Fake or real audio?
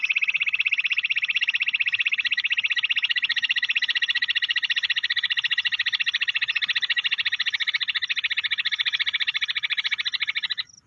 real